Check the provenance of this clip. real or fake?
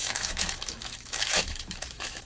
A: fake